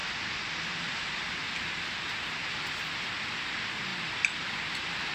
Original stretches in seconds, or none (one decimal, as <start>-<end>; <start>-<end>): 0.0-5.1